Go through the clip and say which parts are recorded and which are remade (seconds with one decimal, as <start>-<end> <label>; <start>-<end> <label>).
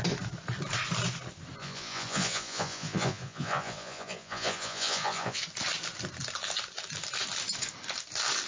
0.0-1.6 recorded; 1.6-5.4 remade; 5.4-8.5 recorded